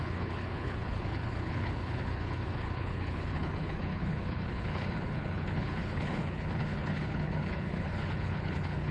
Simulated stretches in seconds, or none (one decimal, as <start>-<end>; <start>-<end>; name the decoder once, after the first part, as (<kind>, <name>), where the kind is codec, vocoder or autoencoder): 0.0-8.9 (codec, HILCodec)